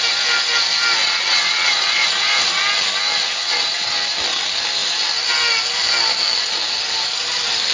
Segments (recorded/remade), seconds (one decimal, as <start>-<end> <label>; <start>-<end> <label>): 0.0-1.0 recorded; 1.0-2.6 remade; 2.6-3.2 recorded; 3.2-3.9 remade; 3.9-7.7 recorded